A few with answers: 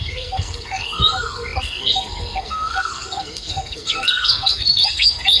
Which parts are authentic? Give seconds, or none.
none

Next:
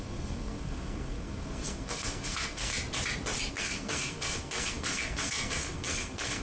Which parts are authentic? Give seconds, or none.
2.7-3.5

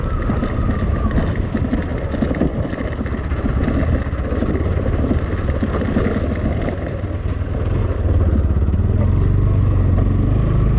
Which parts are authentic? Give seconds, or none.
0.0-10.8

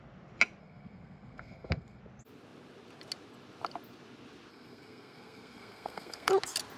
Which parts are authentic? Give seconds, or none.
0.0-0.6; 2.0-4.5; 6.3-6.8